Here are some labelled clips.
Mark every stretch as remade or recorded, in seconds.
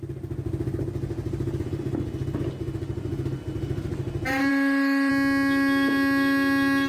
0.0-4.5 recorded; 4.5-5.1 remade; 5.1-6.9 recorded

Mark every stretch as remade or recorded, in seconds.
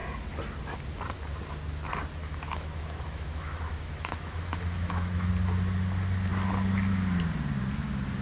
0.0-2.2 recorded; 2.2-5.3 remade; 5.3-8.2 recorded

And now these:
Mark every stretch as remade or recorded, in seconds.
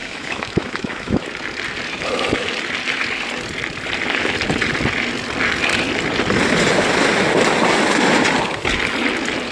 0.0-1.3 remade; 1.3-9.5 recorded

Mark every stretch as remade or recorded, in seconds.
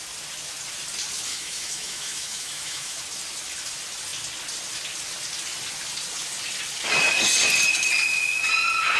0.0-1.3 recorded; 1.3-3.0 remade; 3.0-9.0 recorded